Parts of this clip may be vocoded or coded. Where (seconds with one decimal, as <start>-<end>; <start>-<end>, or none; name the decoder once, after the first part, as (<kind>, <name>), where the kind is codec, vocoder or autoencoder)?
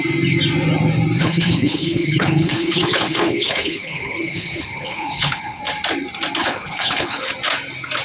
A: 1.2-5.6 (codec, HILCodec); 6.4-7.3